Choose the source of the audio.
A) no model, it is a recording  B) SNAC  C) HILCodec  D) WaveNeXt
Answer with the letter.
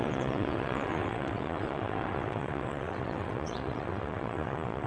D